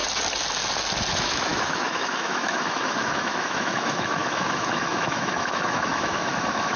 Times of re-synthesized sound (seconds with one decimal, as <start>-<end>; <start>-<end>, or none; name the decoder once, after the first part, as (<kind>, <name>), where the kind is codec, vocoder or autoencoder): 1.1-6.8 (autoencoder, DAC-VAE)